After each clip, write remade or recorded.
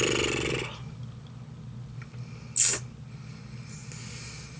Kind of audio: recorded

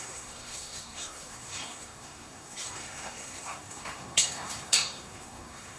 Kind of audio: remade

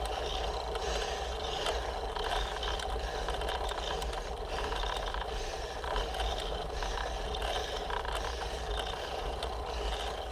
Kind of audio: recorded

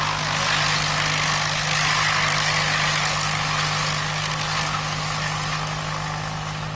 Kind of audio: recorded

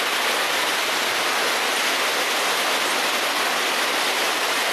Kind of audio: recorded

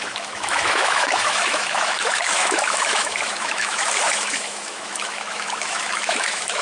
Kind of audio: remade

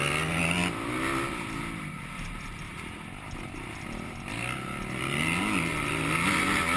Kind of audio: recorded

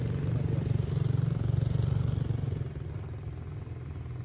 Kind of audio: recorded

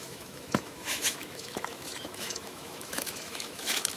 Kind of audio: remade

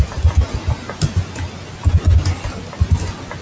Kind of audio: recorded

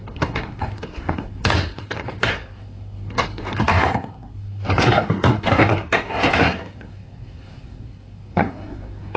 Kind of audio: remade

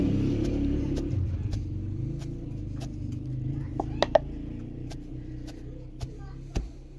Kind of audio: recorded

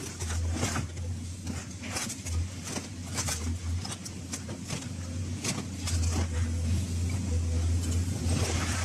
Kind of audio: recorded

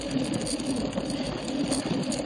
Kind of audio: recorded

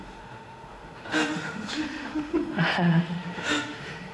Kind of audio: remade